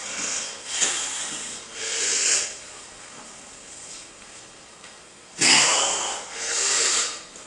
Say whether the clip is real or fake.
fake